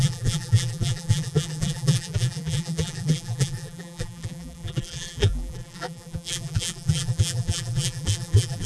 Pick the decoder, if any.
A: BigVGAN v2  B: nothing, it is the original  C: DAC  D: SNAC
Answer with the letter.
A